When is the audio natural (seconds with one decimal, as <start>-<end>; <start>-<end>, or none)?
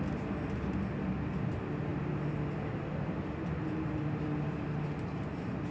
0.0-5.7